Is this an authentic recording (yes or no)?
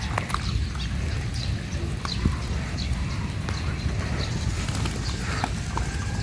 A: yes